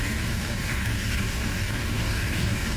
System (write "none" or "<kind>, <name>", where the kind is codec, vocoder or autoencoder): codec, DAC